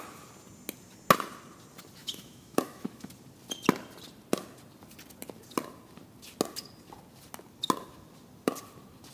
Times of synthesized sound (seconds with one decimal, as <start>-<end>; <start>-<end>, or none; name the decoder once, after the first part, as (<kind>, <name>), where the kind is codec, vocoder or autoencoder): 2.0-3.1 (autoencoder, DAC-VAE)